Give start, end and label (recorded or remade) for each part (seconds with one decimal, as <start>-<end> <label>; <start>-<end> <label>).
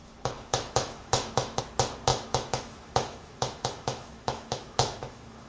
0.0-1.6 remade; 1.6-2.1 recorded; 2.1-5.5 remade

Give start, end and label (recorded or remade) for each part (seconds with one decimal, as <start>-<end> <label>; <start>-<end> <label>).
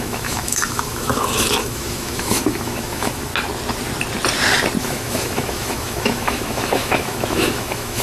0.0-3.3 remade; 3.3-4.8 recorded; 4.8-8.0 remade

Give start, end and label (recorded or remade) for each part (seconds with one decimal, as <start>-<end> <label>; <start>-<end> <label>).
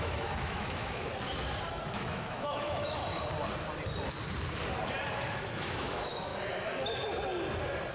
0.0-1.1 remade; 1.1-1.7 recorded; 1.7-3.0 remade; 3.0-5.1 recorded; 5.1-6.3 remade; 6.3-7.9 recorded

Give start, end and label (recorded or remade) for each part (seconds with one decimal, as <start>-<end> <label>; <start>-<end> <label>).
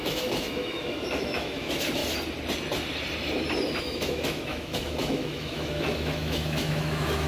0.0-2.0 remade; 2.0-3.8 recorded; 3.8-7.3 remade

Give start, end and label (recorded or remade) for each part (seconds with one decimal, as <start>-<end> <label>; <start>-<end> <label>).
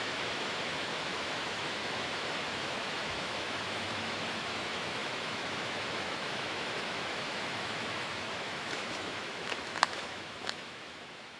0.0-11.4 remade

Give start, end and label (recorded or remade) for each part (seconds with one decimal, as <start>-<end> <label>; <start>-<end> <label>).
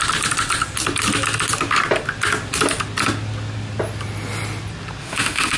0.0-5.0 recorded; 5.0-5.6 remade